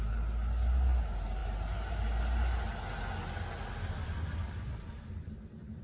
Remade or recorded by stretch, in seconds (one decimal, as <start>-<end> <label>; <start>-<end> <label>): 0.0-5.8 recorded